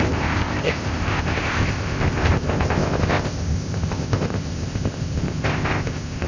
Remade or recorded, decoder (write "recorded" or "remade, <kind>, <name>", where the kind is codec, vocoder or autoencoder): remade, codec, ZipCodec